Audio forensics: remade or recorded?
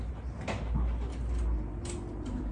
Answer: recorded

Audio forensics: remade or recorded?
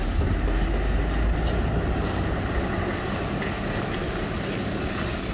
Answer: recorded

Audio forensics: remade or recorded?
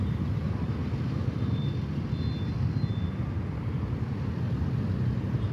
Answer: recorded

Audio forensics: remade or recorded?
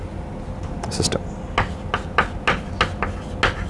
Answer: recorded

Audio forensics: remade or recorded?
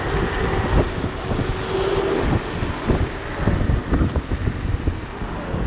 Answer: recorded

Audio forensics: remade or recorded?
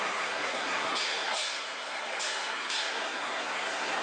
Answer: remade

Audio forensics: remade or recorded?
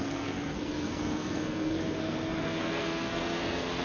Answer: remade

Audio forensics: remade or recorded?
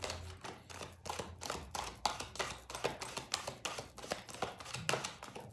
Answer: recorded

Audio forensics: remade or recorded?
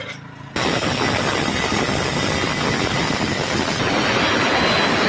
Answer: recorded